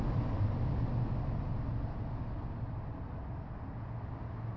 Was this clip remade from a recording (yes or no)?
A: no